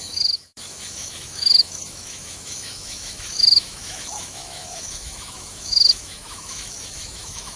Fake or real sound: fake